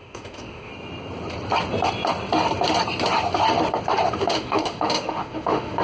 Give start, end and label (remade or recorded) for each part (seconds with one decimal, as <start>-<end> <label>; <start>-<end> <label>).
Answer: 0.0-0.7 remade; 0.7-4.2 recorded; 4.2-5.8 remade